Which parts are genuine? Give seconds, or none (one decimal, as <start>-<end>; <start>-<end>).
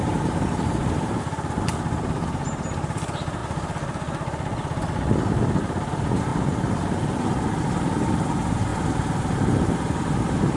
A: 3.4-5.6; 6.3-7.6; 8.7-9.5